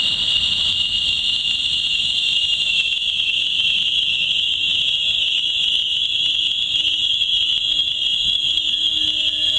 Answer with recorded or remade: recorded